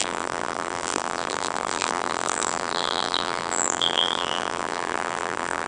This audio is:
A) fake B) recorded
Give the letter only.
A